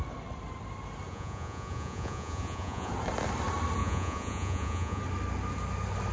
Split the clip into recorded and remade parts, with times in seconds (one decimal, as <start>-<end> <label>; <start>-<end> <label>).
0.0-1.1 recorded; 1.1-2.9 remade; 2.9-3.8 recorded; 3.8-5.0 remade; 5.0-6.1 recorded